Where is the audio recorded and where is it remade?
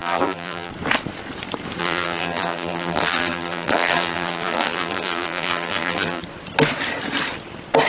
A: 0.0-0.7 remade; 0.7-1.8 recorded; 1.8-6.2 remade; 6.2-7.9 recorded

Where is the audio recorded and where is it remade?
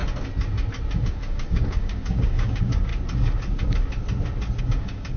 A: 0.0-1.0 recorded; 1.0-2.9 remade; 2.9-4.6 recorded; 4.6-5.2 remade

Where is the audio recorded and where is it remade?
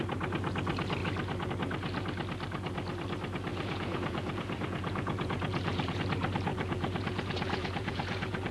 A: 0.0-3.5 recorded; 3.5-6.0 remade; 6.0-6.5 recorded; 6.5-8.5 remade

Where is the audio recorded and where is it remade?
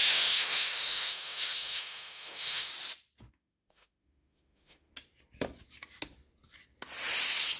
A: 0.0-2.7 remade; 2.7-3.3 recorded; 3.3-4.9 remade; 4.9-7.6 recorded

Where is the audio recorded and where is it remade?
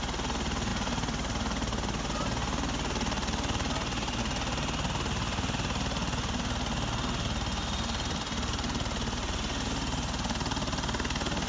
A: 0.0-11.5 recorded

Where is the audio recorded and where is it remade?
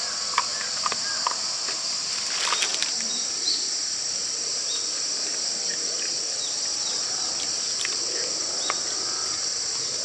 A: 0.0-0.5 recorded; 0.5-1.0 remade; 1.0-2.7 recorded; 2.7-7.7 remade; 7.7-10.0 recorded